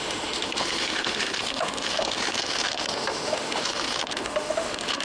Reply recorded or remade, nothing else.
remade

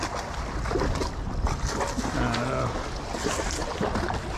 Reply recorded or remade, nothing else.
recorded